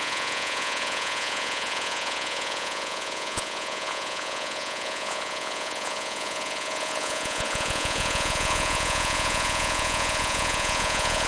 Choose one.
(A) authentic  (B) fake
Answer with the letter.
B